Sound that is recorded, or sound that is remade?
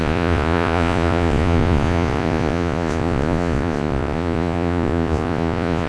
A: remade